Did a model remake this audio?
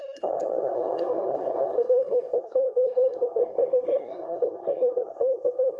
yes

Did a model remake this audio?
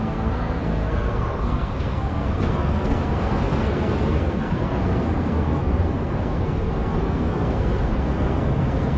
yes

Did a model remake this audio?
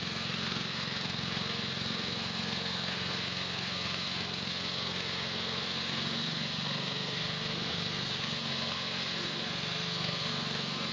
yes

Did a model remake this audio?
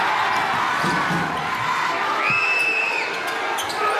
no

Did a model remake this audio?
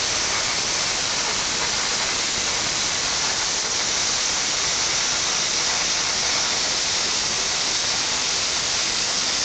no